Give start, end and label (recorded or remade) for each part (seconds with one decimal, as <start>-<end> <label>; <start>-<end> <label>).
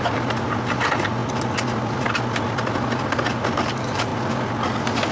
0.0-1.2 remade; 1.2-3.1 recorded; 3.1-4.1 remade; 4.1-5.1 recorded